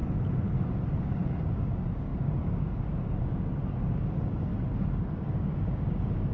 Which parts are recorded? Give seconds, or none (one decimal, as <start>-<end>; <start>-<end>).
0.0-1.0; 4.5-5.1